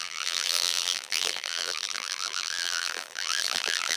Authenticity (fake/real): fake